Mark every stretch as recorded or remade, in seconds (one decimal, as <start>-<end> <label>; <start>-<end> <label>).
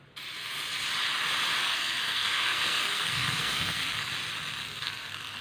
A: 0.0-1.6 recorded; 1.6-4.1 remade; 4.1-4.6 recorded; 4.6-5.4 remade